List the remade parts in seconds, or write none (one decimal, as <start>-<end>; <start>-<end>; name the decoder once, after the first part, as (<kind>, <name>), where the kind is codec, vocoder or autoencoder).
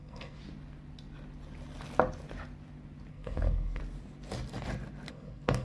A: 0.0-0.4 (codec, SNAC); 3.1-3.8; 5.1-5.6